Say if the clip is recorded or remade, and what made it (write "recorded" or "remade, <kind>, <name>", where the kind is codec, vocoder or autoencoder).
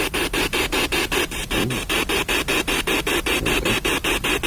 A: recorded